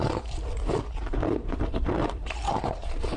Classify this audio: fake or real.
fake